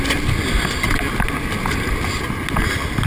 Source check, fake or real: real